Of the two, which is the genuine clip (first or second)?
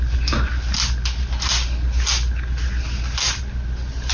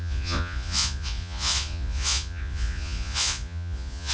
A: first